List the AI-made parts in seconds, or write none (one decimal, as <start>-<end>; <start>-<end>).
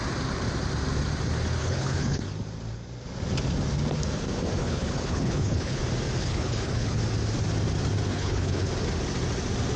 1.6-2.2; 4.6-5.8; 6.2-7.0; 8.1-8.7